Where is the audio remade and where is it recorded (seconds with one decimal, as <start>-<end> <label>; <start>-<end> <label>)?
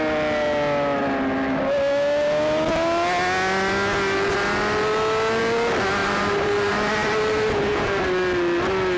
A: 0.0-6.0 recorded; 6.0-8.0 remade; 8.0-9.0 recorded